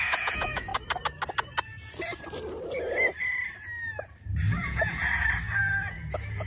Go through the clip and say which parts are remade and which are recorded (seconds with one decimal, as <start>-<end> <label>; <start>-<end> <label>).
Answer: 0.0-0.7 remade; 0.7-4.6 recorded; 4.6-5.0 remade; 5.0-5.6 recorded; 5.6-6.5 remade